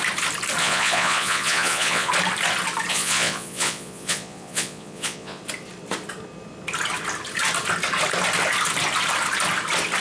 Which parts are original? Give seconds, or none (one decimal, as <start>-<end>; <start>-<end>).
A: 0.0-0.6; 2.1-2.9; 5.4-10.0